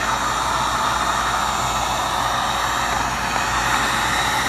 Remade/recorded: recorded